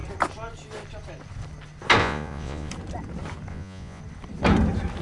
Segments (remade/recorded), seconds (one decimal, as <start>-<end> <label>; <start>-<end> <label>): 0.0-2.0 recorded; 2.0-2.7 remade; 2.7-3.5 recorded; 3.5-4.0 remade; 4.0-5.0 recorded